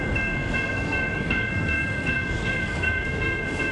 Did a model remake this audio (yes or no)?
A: yes